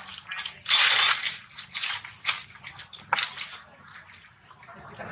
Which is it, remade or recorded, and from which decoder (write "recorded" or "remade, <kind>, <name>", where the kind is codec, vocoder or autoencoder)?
recorded